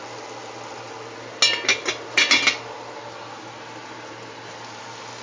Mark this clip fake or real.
real